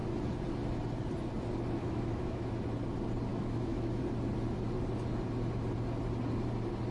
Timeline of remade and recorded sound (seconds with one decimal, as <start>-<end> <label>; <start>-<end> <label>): 0.0-1.8 recorded; 1.8-2.5 remade; 2.5-3.3 recorded; 3.3-4.0 remade; 4.0-6.9 recorded